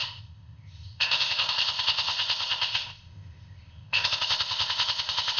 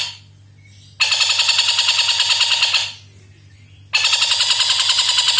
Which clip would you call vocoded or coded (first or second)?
first